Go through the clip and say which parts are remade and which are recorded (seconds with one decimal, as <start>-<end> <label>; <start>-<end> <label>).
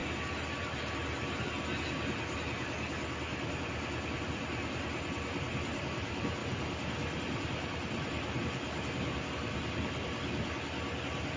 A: 0.0-11.4 recorded